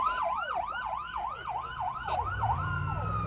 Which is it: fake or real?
real